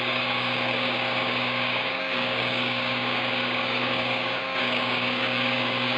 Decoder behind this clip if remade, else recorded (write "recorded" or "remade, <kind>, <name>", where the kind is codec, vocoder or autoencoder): remade, codec, DAC